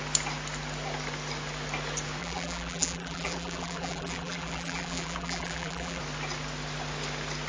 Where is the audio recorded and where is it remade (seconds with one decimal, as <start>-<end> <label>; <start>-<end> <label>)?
0.0-2.2 recorded; 2.2-6.0 remade; 6.0-7.5 recorded